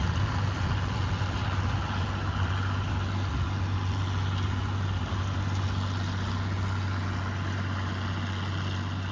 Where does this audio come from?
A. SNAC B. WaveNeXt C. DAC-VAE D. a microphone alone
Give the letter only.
D